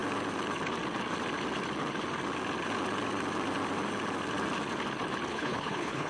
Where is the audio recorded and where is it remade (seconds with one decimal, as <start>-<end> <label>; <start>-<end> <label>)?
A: 0.0-5.3 recorded; 5.3-6.1 remade